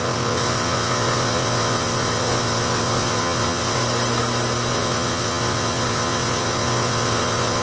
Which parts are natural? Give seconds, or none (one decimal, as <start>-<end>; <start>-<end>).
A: 3.8-4.7